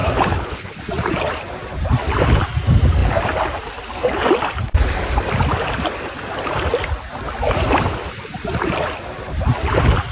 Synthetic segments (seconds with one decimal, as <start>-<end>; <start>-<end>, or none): 0.0-0.8